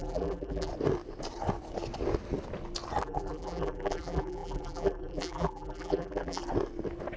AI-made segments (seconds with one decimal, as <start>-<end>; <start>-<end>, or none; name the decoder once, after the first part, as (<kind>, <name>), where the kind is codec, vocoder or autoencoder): 0.0-0.7 (vocoder, BigVGAN v2); 3.0-6.4